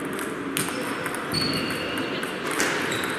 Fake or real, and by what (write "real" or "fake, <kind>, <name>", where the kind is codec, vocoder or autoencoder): real